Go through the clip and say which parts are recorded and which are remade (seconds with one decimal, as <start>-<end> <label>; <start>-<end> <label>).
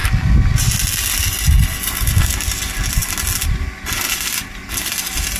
0.0-5.4 recorded